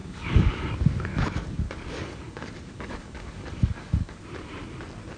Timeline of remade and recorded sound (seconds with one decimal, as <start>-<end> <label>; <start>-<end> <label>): 0.0-0.6 remade; 0.6-1.1 recorded; 1.1-4.2 remade; 4.2-5.2 recorded